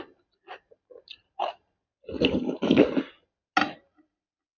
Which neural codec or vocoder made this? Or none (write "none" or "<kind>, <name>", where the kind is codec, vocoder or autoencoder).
none